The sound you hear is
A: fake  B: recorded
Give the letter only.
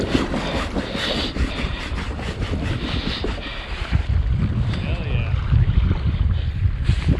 B